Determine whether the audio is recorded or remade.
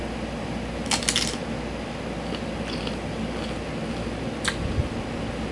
recorded